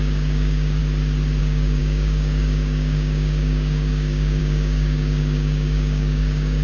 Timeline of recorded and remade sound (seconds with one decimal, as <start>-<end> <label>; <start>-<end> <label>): 0.0-0.8 remade; 0.8-1.4 recorded; 1.4-6.6 remade